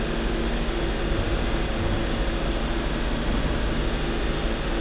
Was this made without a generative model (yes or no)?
yes